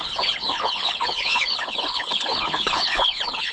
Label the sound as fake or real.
fake